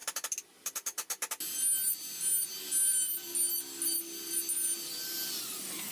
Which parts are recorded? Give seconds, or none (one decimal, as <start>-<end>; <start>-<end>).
0.0-5.9